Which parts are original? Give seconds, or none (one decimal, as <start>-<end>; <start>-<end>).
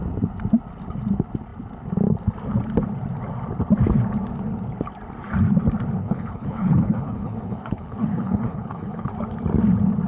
0.0-6.0; 9.1-10.1